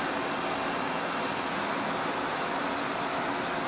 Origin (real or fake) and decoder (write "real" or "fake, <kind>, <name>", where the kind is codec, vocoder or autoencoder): real